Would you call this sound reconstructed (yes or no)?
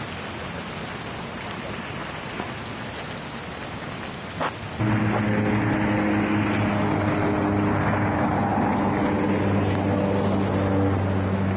no